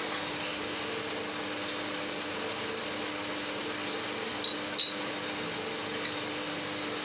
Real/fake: real